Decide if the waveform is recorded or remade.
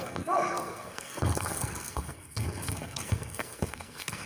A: remade